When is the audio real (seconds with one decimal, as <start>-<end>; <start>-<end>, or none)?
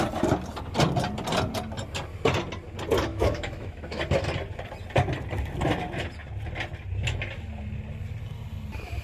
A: 0.0-3.1; 4.0-9.0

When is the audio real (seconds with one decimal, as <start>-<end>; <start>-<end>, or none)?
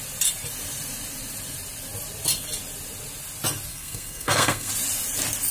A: 0.0-3.7; 4.7-5.5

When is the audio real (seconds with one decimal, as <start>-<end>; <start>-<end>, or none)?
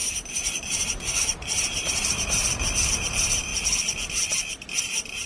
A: 3.5-4.8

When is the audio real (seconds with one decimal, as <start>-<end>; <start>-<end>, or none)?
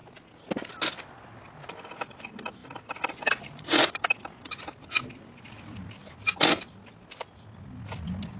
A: 0.0-2.6; 4.5-8.4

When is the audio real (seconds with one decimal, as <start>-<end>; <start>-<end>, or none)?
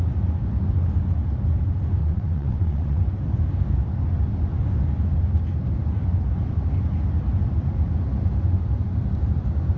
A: 0.0-2.0; 3.0-9.8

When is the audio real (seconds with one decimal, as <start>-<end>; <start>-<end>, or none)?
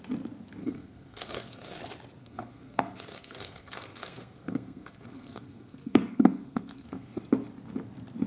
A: 0.0-0.6; 1.8-2.2; 7.2-8.3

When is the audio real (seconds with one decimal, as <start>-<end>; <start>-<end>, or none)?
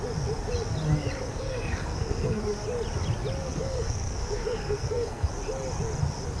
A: 0.0-1.3; 2.4-3.4; 5.3-6.4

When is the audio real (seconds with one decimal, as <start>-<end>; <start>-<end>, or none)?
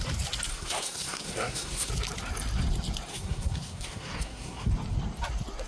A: 0.0-0.5; 1.9-3.1; 4.7-5.7